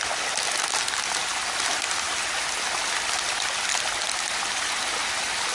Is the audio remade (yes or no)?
no